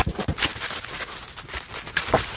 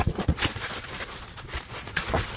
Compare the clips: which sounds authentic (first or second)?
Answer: first